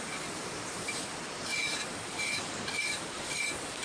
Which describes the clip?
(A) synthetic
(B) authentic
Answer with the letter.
A